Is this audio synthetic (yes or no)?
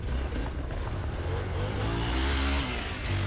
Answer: no